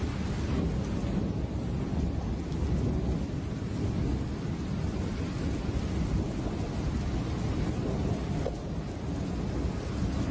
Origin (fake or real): real